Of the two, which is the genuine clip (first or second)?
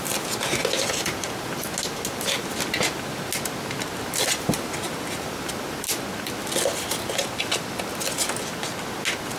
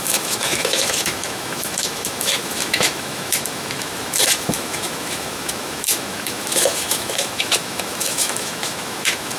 first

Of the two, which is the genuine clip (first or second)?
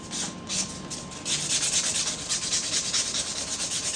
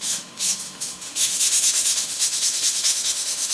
first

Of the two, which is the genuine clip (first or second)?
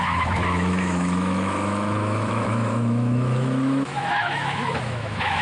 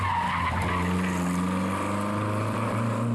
second